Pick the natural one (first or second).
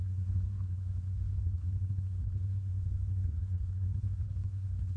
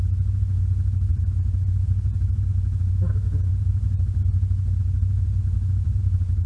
second